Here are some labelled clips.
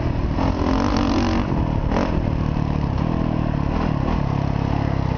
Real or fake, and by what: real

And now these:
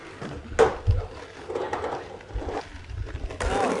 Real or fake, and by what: real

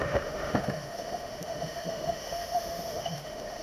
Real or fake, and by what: fake, autoencoder, DAC-VAE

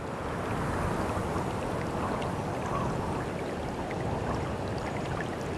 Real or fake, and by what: real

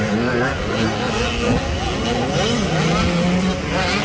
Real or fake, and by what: real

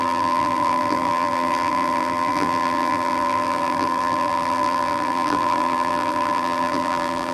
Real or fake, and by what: fake, vocoder, BigVGAN v2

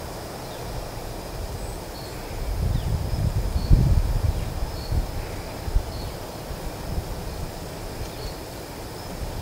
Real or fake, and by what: real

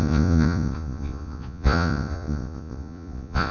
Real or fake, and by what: fake, vocoder, Vocos